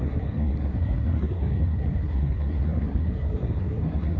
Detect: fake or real fake